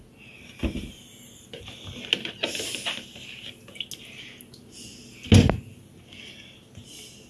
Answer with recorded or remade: recorded